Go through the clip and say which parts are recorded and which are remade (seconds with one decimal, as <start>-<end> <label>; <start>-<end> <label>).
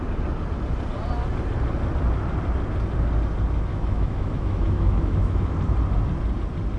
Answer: 0.0-3.7 recorded; 3.7-5.5 remade; 5.5-6.8 recorded